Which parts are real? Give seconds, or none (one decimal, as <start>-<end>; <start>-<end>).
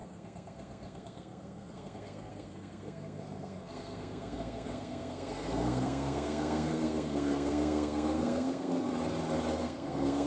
8.9-9.6